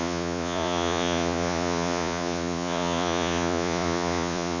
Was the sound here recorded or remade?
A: remade